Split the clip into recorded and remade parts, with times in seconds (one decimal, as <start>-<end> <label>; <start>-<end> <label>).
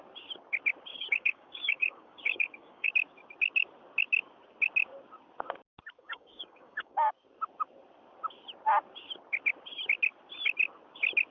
0.0-0.9 recorded; 0.9-2.9 remade; 2.9-6.0 recorded; 6.0-7.1 remade; 7.1-11.3 recorded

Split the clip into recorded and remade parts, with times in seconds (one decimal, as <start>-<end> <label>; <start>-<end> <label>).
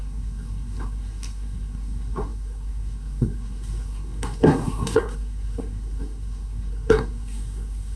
0.0-8.0 remade